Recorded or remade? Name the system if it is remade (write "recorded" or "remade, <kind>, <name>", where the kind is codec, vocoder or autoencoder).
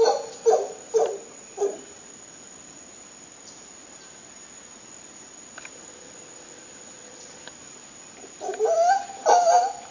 recorded